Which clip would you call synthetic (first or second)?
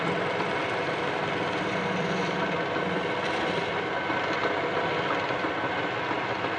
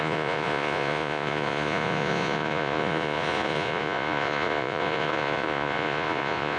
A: second